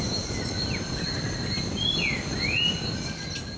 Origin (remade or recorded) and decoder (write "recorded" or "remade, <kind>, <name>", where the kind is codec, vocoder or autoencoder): recorded